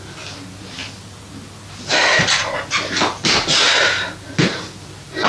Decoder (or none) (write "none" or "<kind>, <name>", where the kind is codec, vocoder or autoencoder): none